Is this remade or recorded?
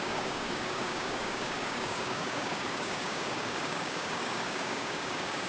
remade